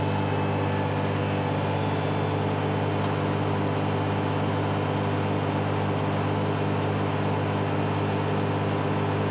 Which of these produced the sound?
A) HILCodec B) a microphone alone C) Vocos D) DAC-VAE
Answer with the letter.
B